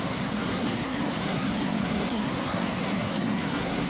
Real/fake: fake